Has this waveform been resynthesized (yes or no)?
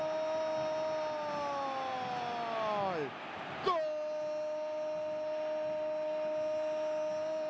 no